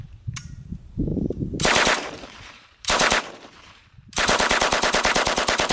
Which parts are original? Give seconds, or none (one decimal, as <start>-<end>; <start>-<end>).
none